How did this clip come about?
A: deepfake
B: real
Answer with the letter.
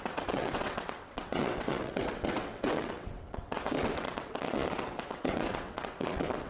A